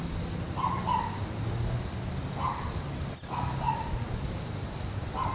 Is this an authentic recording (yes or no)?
yes